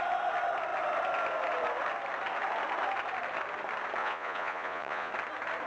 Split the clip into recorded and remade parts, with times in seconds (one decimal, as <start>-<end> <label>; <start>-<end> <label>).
0.0-4.0 recorded; 4.0-5.1 remade; 5.1-5.7 recorded